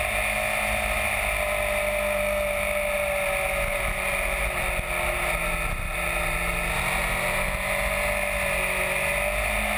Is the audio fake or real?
real